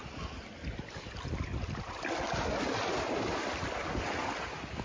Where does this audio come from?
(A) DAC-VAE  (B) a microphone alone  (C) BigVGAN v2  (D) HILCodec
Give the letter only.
B